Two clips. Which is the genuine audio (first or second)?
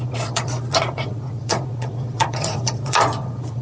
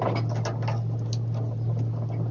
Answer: second